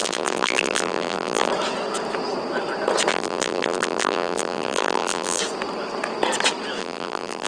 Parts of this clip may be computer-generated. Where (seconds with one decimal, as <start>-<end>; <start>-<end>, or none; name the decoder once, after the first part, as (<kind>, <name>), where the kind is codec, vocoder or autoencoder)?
0.0-1.5 (vocoder, BigVGAN v2); 3.1-5.4; 6.8-7.5